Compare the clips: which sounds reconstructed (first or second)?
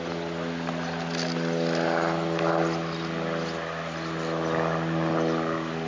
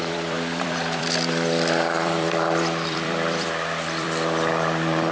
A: second